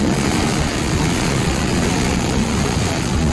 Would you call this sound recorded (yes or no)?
no